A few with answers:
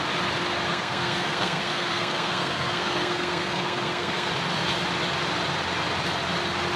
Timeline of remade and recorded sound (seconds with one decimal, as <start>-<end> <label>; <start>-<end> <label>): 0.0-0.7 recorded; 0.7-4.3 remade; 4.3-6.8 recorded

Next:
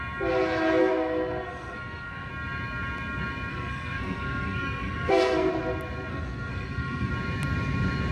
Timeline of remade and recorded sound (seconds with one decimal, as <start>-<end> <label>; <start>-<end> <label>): 0.0-0.8 recorded; 0.8-2.3 remade; 2.3-3.5 recorded; 3.5-5.5 remade; 5.5-6.1 recorded; 6.1-7.1 remade; 7.1-8.1 recorded

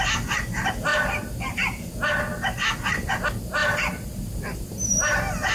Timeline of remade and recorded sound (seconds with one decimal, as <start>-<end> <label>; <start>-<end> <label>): 0.0-0.9 recorded; 0.9-1.9 remade; 1.9-3.6 recorded; 3.6-5.5 remade

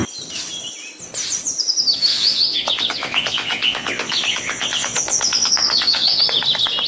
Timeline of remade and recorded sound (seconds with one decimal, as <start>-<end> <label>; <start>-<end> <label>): 0.0-2.1 recorded; 2.1-6.2 remade; 6.2-6.9 recorded

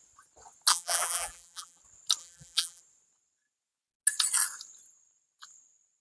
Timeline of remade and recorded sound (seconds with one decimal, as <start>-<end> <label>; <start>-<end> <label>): 0.0-0.7 recorded; 0.7-1.8 remade; 1.8-2.2 recorded; 2.2-2.8 remade; 2.8-6.0 recorded